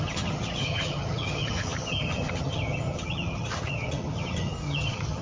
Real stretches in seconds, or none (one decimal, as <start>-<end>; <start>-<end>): none